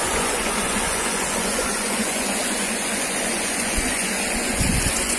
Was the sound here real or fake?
fake